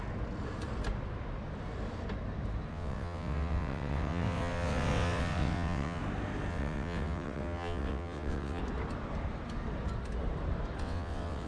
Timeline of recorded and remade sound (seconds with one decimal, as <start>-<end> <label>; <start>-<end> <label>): 0.0-2.7 recorded; 2.7-6.0 remade; 6.0-6.5 recorded; 6.5-8.6 remade; 8.6-10.8 recorded; 10.8-11.5 remade